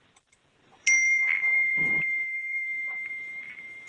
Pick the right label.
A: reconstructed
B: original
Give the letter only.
A